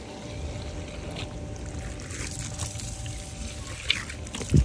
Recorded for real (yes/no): yes